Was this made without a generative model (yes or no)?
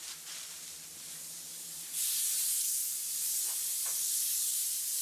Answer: no